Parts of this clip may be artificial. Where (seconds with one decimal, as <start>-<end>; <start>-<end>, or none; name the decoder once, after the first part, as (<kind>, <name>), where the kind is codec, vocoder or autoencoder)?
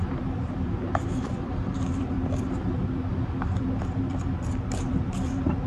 0.0-5.7 (vocoder, BigVGAN v2)